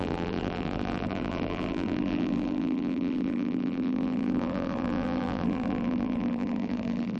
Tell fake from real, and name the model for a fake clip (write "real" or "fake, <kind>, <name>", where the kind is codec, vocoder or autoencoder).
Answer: fake, vocoder, BigVGAN v2